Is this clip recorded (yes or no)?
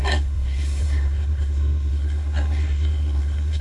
no